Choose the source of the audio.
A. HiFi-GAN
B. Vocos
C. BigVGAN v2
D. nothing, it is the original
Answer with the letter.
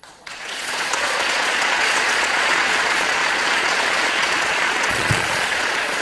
B